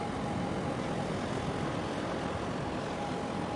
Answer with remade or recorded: recorded